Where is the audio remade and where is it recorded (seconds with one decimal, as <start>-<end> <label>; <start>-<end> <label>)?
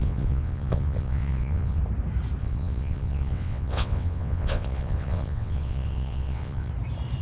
0.0-1.8 remade; 1.8-2.4 recorded; 2.4-6.7 remade; 6.7-7.2 recorded